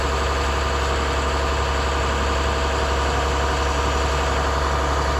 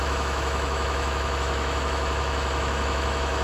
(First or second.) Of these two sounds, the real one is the first